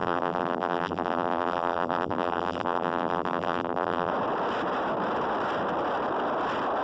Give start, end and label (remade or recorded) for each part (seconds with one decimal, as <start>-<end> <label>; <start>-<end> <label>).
0.0-4.1 remade; 4.1-6.8 recorded

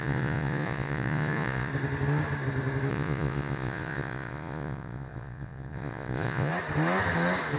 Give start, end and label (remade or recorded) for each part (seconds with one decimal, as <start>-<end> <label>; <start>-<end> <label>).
0.0-1.7 remade; 1.7-2.9 recorded; 2.9-6.5 remade; 6.5-7.6 recorded

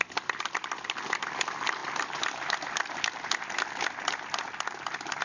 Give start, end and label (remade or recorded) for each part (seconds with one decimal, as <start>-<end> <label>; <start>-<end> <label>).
0.0-5.2 recorded

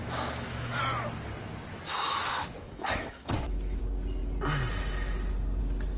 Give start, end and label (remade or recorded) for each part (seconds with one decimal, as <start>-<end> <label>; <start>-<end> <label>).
0.0-0.8 remade; 0.8-1.9 recorded; 1.9-3.8 remade; 3.8-6.0 recorded

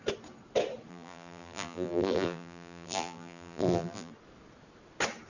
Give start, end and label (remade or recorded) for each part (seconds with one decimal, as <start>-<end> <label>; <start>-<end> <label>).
0.0-0.9 recorded; 0.9-4.1 remade; 4.1-5.3 recorded

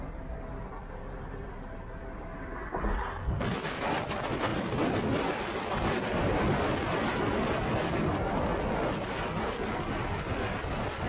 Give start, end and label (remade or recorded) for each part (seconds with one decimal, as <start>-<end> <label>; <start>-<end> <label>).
0.0-11.1 recorded

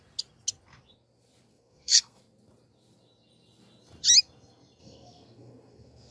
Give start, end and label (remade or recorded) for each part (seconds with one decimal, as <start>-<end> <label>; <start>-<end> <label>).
0.0-1.5 recorded; 1.5-2.2 remade; 2.2-4.8 recorded; 4.8-6.1 remade

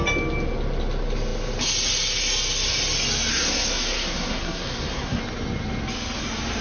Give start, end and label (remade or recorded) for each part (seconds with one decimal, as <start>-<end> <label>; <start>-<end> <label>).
0.0-3.3 recorded; 3.3-5.2 remade; 5.2-6.6 recorded